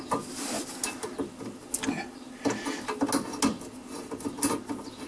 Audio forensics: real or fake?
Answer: real